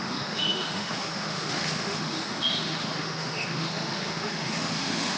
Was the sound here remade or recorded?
remade